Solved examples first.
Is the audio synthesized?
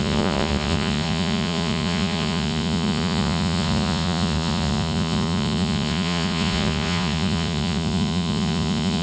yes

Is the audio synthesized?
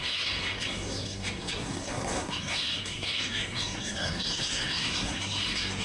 yes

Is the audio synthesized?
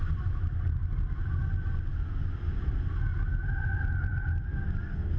no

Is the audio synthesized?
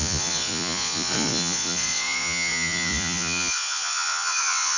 yes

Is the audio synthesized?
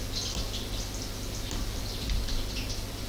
no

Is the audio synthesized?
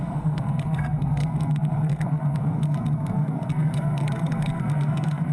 yes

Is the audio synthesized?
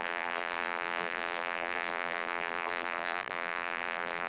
yes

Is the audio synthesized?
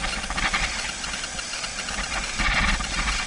no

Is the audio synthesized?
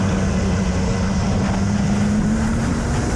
no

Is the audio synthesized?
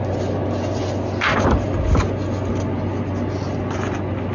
no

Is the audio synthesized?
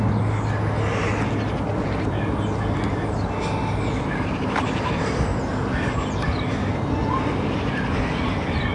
no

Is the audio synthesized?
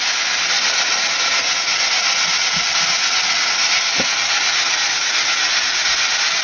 no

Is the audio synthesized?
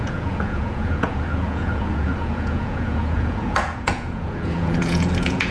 yes